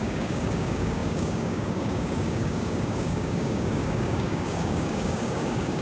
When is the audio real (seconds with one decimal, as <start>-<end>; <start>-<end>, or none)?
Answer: none